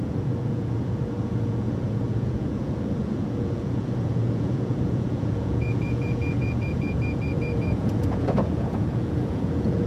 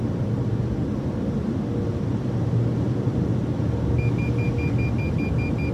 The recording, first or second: second